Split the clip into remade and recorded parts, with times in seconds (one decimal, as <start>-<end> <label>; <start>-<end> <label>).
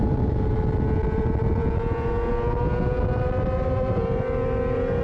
0.0-5.0 recorded